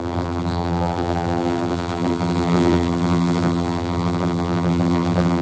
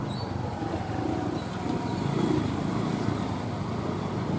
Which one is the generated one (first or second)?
first